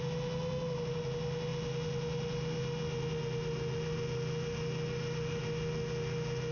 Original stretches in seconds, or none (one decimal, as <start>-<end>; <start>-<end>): 0.0-6.5